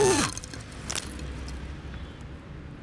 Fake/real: real